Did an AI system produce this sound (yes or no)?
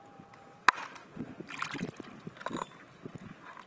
no